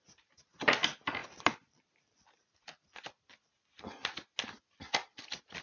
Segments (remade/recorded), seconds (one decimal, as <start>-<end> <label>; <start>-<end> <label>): 0.0-5.6 recorded